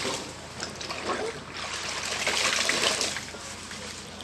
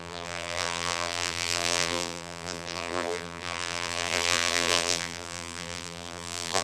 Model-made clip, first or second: second